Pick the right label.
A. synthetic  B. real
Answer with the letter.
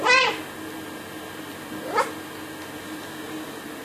B